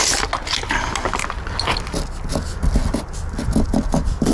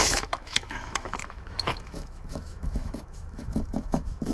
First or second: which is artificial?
second